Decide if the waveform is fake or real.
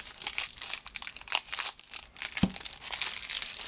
real